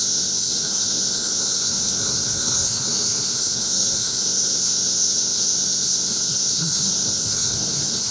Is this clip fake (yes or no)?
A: yes